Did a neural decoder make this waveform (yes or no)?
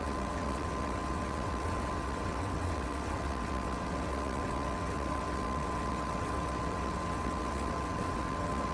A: yes